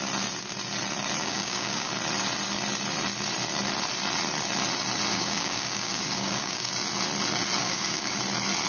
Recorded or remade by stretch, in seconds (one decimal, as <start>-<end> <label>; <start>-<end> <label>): 0.0-1.2 recorded; 1.2-1.9 remade; 1.9-5.1 recorded; 5.1-6.7 remade; 6.7-7.6 recorded; 7.6-8.2 remade; 8.2-8.7 recorded